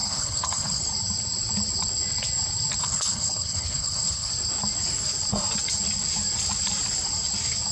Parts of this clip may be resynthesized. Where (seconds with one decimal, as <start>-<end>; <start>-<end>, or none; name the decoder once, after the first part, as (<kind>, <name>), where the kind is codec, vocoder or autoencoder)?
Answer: 0.0-0.8 (codec, HILCodec); 2.8-4.3